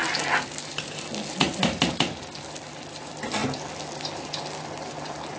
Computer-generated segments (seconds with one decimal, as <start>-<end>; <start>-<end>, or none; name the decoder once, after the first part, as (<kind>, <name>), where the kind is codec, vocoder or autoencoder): none